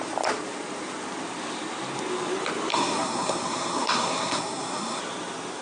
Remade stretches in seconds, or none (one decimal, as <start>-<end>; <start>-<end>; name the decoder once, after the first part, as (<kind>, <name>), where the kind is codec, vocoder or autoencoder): 2.7-5.0 (codec, SNAC)